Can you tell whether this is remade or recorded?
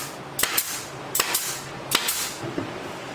recorded